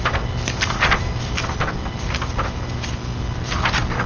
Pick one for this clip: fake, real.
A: real